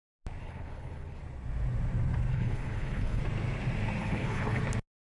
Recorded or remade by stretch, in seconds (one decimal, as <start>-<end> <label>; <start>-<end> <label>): 0.0-0.4 recorded; 0.4-1.2 remade; 1.2-2.3 recorded; 2.3-3.2 remade; 3.2-4.0 recorded; 4.0-4.6 remade; 4.6-5.0 recorded